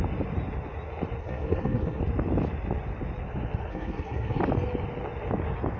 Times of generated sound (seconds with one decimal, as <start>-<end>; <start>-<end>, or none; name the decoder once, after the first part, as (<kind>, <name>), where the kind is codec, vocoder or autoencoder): 1.2-2.0 (codec, SNAC); 3.7-4.4

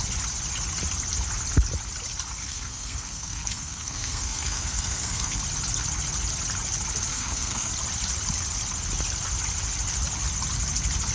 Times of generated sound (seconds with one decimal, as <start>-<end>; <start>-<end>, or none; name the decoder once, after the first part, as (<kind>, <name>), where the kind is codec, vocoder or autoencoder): 2.4-5.4 (codec, SNAC); 7.1-7.7